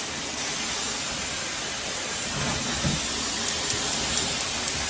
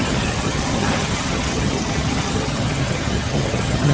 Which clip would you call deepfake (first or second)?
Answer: second